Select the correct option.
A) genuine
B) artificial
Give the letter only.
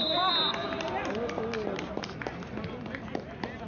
A